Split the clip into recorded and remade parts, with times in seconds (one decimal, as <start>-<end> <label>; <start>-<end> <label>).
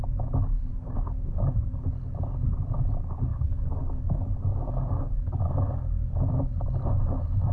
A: 0.0-0.7 recorded; 0.7-1.8 remade; 1.8-3.3 recorded; 3.3-6.5 remade; 6.5-7.5 recorded